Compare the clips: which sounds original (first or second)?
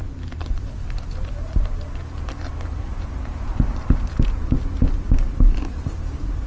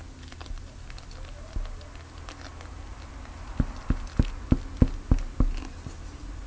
second